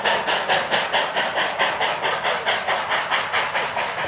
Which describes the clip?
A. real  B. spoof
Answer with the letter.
A